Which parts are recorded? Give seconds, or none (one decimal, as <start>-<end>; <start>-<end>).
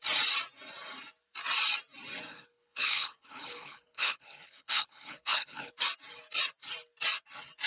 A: 0.0-2.3; 5.7-7.7